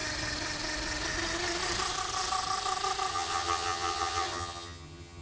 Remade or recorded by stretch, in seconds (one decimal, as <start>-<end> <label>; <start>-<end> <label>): 0.0-3.1 recorded; 3.1-5.2 remade